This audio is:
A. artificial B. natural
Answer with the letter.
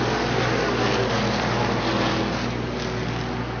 B